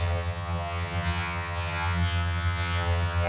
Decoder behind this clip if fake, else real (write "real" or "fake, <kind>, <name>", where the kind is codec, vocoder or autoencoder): fake, vocoder, HiFi-GAN